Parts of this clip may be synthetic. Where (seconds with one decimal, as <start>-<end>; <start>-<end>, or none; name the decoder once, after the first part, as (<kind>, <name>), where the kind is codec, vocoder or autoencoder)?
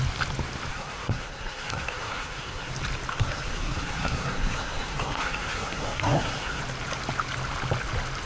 0.7-2.7 (codec, SNAC); 3.1-6.6